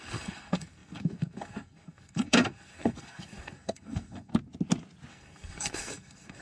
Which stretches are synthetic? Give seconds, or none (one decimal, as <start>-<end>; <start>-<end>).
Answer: 0.0-4.3; 5.1-6.4